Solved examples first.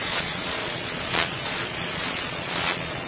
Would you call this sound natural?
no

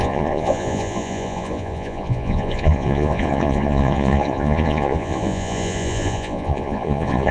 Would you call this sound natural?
no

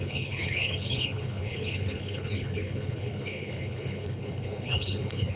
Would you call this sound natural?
no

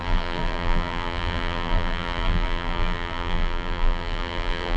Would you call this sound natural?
no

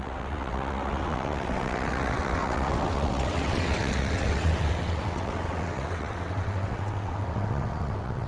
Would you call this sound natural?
no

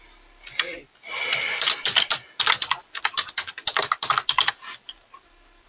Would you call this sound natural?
yes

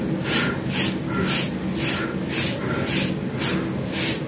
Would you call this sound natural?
yes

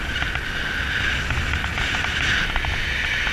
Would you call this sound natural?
yes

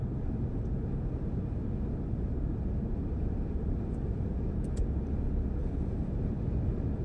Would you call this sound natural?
no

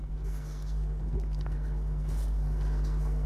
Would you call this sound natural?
no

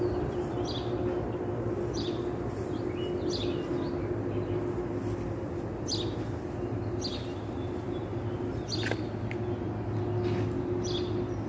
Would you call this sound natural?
yes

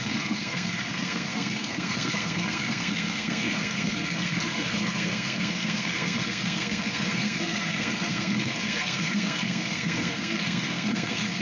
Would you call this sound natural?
no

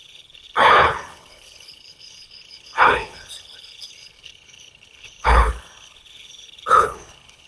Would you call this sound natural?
no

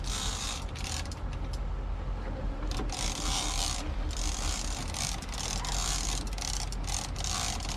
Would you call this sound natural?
yes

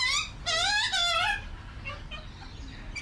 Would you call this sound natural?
yes